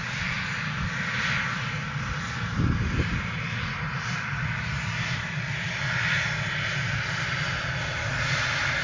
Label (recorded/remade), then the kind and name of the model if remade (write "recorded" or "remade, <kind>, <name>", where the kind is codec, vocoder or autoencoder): recorded